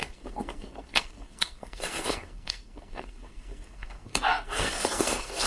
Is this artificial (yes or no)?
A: yes